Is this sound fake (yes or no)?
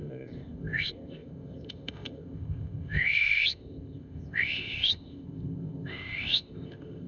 yes